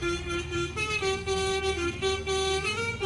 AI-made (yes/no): yes